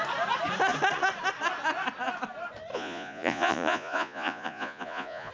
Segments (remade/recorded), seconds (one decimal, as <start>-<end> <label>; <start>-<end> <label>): 0.0-2.7 recorded; 2.7-5.3 remade